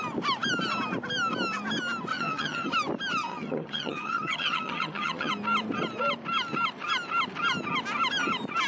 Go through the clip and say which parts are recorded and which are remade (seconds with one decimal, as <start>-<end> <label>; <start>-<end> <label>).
0.0-2.1 recorded; 2.1-2.7 remade; 2.7-3.3 recorded; 3.3-5.3 remade; 5.3-8.7 recorded